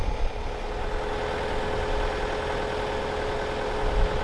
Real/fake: real